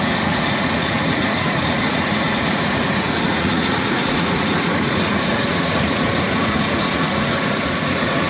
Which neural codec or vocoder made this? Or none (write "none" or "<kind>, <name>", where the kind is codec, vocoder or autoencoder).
vocoder, Vocos